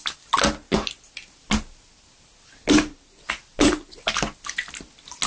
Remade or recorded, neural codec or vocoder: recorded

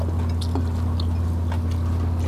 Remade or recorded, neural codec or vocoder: recorded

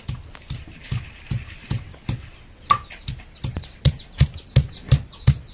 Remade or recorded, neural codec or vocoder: recorded